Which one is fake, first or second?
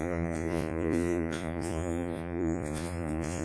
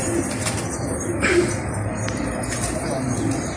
first